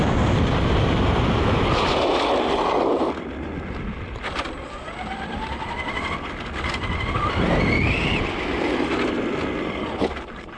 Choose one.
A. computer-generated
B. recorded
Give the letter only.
B